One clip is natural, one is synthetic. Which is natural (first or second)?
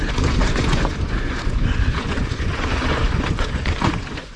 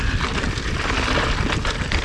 second